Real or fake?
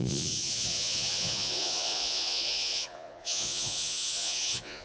fake